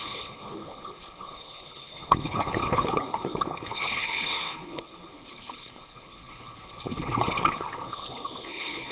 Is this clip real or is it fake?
fake